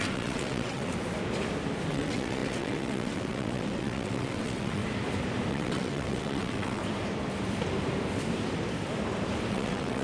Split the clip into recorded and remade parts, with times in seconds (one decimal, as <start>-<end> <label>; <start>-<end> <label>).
0.0-0.9 remade; 0.9-1.9 recorded; 1.9-4.8 remade; 4.8-5.5 recorded; 5.5-6.8 remade; 6.8-9.5 recorded; 9.5-10.0 remade